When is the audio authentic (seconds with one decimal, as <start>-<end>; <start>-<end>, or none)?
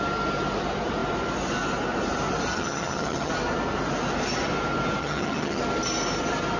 0.0-2.5; 3.3-5.0; 5.6-6.6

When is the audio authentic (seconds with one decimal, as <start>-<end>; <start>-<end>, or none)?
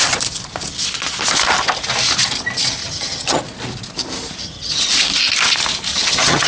0.0-2.8; 3.4-4.4; 4.9-5.9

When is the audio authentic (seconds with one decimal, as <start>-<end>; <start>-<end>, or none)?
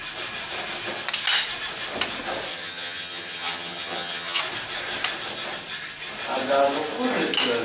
0.0-2.5; 4.4-7.6